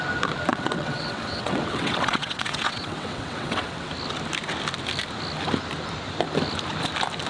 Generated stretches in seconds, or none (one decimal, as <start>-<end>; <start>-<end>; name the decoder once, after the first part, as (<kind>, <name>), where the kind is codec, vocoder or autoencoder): 0.5-3.9 (vocoder, WaveNeXt)